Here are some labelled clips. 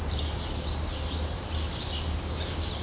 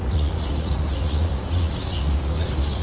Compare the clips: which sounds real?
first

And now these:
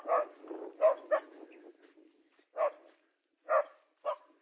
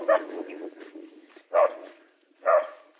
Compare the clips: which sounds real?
first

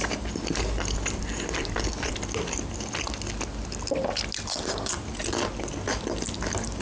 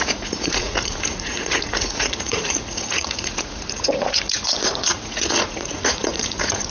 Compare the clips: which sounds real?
first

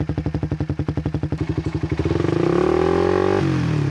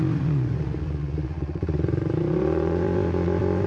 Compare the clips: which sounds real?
first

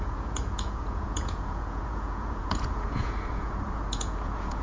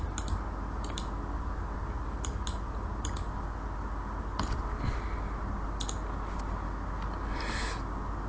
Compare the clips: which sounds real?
second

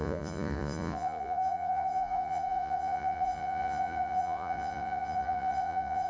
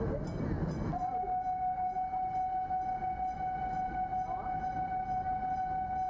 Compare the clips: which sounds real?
second